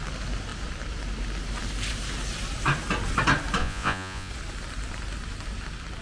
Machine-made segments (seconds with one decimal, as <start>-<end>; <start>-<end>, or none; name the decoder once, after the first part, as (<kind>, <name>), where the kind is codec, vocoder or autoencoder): 3.6-4.3 (vocoder, Vocos)